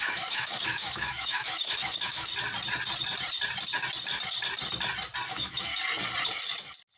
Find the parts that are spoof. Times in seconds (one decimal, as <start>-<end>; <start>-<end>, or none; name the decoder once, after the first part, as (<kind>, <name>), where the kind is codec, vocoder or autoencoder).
0.0-2.3 (autoencoder, DAC-VAE); 5.3-5.7